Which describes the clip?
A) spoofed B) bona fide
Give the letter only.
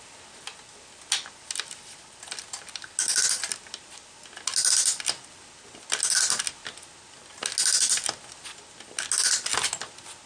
B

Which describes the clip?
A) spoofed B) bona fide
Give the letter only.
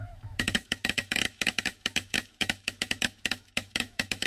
A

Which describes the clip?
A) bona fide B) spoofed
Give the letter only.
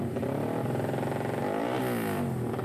A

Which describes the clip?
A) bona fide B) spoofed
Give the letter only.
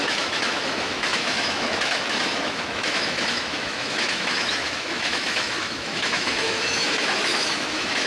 B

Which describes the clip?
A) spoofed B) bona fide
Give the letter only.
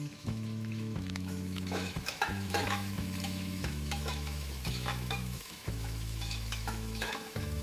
A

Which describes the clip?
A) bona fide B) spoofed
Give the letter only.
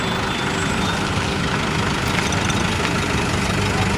A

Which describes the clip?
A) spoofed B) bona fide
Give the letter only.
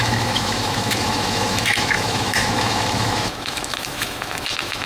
A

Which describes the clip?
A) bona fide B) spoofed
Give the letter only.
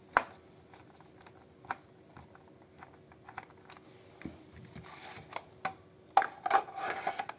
A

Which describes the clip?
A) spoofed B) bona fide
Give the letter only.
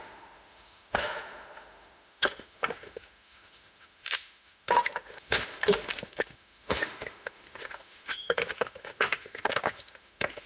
A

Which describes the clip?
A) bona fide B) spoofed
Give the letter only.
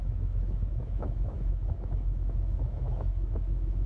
B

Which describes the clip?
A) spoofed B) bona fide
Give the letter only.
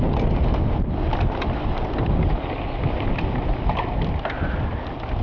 B